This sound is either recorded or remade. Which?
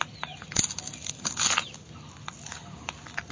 recorded